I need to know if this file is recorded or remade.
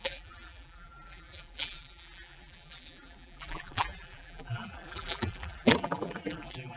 remade